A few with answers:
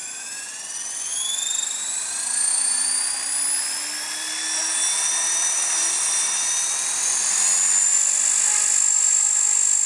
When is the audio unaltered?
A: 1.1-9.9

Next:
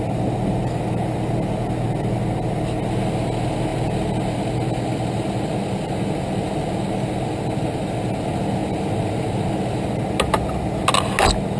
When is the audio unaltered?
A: 0.0-11.6

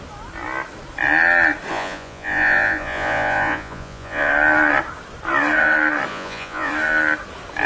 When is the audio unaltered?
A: 0.0-1.7; 4.3-6.1; 6.7-7.7